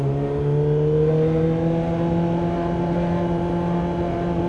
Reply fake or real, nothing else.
real